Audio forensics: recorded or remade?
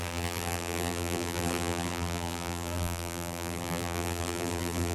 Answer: remade